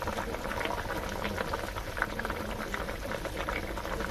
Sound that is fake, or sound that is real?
real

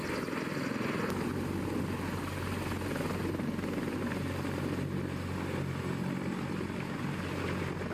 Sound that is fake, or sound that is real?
real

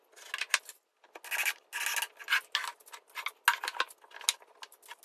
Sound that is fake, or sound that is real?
real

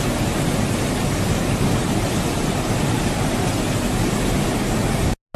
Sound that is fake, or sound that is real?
real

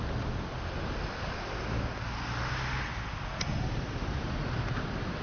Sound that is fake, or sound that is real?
real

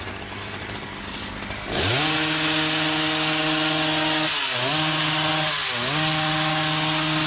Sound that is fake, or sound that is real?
real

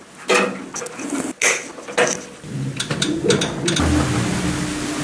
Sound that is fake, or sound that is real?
real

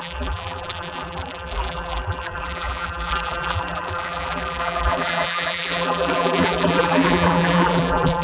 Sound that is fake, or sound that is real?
fake